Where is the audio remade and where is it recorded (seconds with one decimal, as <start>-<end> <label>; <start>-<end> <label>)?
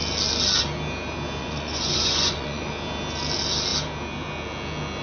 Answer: 0.0-1.4 recorded; 1.4-2.7 remade; 2.7-5.0 recorded